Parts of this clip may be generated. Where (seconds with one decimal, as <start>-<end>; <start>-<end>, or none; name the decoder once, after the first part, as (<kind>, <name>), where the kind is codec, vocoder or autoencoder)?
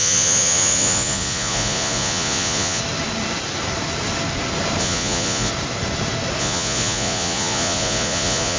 0.0-2.8 (vocoder, Vocos); 4.8-5.5; 6.4-8.6